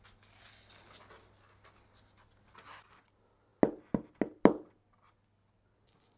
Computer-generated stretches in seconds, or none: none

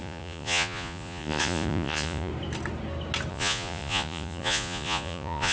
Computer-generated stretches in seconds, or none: 0.0-2.3 (vocoder, Vocos); 3.3-5.5